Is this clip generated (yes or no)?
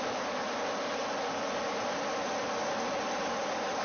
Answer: no